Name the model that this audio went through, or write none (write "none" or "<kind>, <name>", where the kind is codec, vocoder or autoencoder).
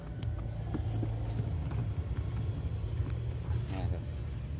none